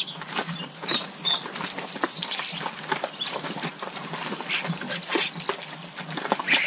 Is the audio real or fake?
real